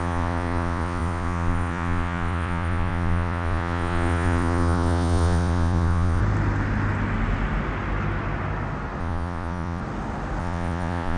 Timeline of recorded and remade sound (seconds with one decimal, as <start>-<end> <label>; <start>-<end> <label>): 0.0-6.2 remade; 6.2-9.0 recorded; 9.0-9.8 remade; 9.8-10.4 recorded; 10.4-11.2 remade